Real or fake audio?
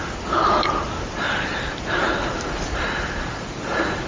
real